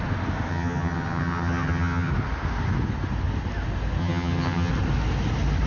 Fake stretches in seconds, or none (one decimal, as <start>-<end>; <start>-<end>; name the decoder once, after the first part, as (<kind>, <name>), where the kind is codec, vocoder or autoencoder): 0.5-2.1 (vocoder, HiFi-GAN); 4.0-4.7